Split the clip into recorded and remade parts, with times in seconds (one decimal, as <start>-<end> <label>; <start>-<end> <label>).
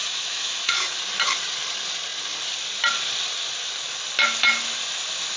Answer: 0.0-1.0 remade; 1.0-5.4 recorded